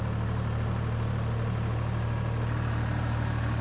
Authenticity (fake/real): real